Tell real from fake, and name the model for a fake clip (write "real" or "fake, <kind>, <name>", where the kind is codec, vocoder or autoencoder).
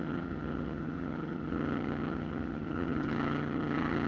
fake, vocoder, HiFi-GAN